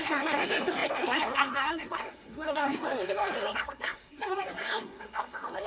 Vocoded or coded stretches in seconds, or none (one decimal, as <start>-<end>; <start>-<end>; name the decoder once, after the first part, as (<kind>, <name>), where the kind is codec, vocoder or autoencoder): 0.0-5.7 (codec, SNAC)